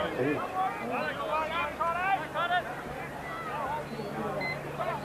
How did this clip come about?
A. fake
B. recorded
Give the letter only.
B